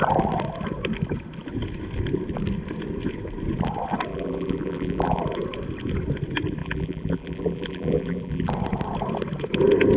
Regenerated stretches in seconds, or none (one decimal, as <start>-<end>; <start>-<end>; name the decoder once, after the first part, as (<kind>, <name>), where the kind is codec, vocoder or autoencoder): 4.1-5.2 (vocoder, BigVGAN v2); 6.6-8.5